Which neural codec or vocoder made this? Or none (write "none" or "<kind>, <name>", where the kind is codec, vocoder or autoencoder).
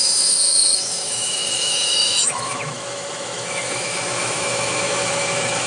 autoencoder, DAC-VAE